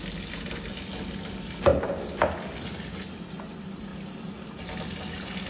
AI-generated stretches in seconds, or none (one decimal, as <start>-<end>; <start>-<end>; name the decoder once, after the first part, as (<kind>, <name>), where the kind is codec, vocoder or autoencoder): none